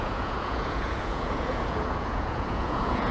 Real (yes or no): no